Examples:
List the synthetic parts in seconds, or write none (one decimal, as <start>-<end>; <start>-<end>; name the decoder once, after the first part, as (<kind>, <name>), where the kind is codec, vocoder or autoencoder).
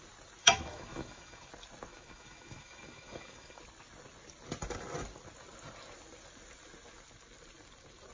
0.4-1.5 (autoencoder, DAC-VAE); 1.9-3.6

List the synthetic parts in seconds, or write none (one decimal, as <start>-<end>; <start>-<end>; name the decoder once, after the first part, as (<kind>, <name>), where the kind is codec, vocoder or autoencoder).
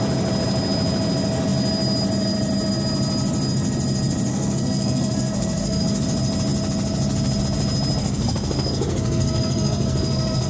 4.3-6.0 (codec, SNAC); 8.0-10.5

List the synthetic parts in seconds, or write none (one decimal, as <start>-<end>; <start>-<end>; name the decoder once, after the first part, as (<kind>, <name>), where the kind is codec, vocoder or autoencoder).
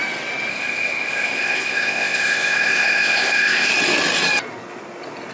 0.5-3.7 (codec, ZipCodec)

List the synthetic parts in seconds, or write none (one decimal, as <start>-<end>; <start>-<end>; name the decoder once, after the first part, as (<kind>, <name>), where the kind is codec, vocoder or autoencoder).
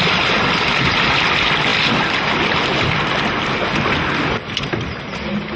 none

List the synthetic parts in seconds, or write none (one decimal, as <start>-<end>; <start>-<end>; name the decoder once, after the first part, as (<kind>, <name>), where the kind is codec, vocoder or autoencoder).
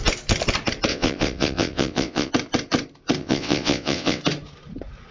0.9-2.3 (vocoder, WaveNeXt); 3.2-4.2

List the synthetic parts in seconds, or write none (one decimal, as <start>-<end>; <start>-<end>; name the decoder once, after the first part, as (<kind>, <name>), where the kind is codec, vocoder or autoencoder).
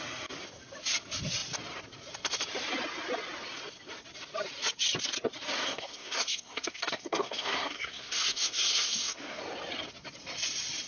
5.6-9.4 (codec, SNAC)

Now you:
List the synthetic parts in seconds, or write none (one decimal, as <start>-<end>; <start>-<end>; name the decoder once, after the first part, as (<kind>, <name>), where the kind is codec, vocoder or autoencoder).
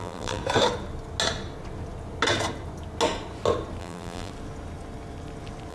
0.0-0.4 (vocoder, BigVGAN v2); 3.8-4.3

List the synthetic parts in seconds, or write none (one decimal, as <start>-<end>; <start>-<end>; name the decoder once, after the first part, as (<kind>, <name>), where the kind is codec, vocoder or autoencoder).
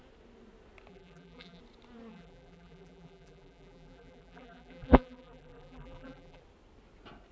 0.9-1.6 (vocoder, BigVGAN v2); 2.1-6.4